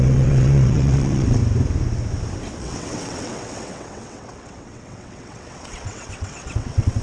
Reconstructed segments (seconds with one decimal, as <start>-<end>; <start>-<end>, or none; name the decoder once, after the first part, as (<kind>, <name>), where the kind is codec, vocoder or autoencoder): 0.0-1.4 (vocoder, WaveNeXt); 2.6-7.0